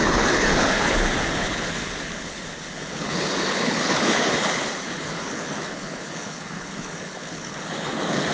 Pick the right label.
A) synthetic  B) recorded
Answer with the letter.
A